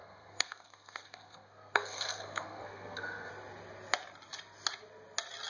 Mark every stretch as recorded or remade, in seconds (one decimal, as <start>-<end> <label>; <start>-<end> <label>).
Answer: 0.0-3.3 remade; 3.3-5.5 recorded